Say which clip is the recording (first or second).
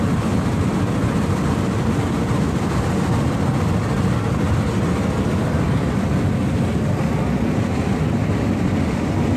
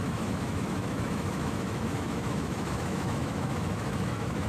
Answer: first